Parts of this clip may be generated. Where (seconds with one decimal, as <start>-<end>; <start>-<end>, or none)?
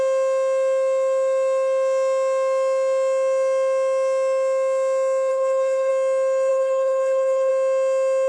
5.3-5.9; 6.5-7.5